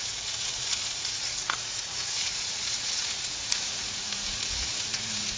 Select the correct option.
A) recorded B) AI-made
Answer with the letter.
B